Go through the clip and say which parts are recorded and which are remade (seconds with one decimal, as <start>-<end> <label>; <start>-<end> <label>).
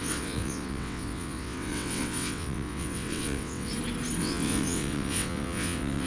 0.0-3.7 remade; 3.7-4.2 recorded; 4.2-6.1 remade